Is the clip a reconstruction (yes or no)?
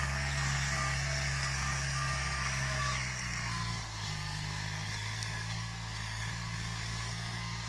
yes